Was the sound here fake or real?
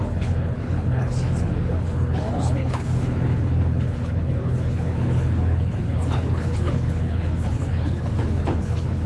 fake